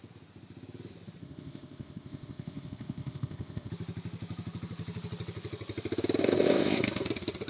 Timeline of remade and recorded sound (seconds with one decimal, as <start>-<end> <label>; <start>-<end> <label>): 0.0-1.2 recorded; 1.2-3.7 remade; 3.7-6.2 recorded; 6.2-6.8 remade; 6.8-7.5 recorded

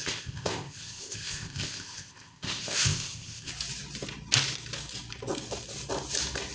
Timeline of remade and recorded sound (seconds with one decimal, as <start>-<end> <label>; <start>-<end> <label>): 0.0-3.5 remade; 3.5-6.5 recorded